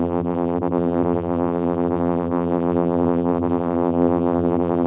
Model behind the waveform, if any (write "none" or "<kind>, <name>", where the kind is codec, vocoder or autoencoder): vocoder, BigVGAN v2